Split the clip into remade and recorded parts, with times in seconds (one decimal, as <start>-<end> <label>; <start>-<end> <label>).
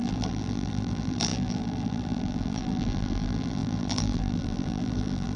0.0-5.4 remade